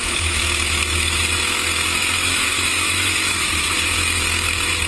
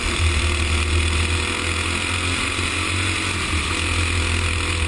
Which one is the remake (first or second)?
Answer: first